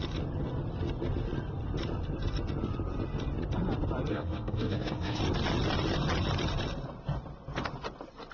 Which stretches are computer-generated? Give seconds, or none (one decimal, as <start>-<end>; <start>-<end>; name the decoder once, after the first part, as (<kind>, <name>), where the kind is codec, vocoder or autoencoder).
4.1-5.2 (codec, SNAC)